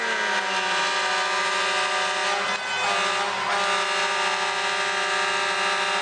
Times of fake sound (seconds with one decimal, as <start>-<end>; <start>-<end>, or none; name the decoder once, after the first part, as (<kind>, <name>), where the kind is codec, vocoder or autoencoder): none